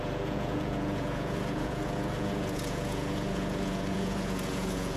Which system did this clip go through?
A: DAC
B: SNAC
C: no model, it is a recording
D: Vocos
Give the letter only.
D